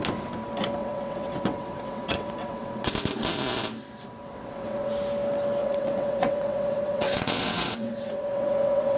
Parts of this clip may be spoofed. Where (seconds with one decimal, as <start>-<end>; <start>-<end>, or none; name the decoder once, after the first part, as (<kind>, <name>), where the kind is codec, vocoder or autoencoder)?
0.8-2.9 (vocoder, WaveNeXt); 4.2-4.9; 5.6-9.0